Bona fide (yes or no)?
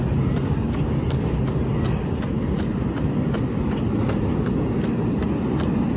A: yes